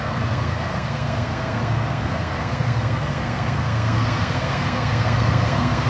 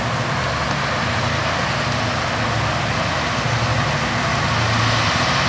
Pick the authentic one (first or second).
second